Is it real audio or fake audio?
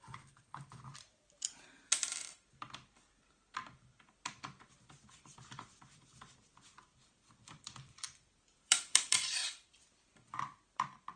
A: fake